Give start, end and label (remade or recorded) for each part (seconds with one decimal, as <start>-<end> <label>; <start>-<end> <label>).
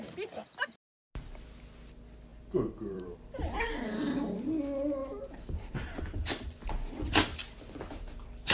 0.0-2.3 recorded; 2.3-3.5 remade; 3.5-5.0 recorded; 5.0-6.0 remade; 6.0-8.5 recorded